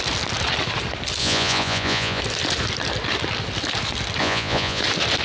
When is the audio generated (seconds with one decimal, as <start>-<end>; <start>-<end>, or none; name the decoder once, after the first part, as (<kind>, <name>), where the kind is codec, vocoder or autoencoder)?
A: 1.2-2.2 (vocoder, Vocos); 4.2-4.8